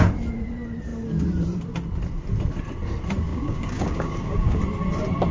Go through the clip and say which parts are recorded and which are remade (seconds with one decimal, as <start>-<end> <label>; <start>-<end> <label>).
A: 0.0-3.3 recorded; 3.3-4.6 remade; 4.6-5.3 recorded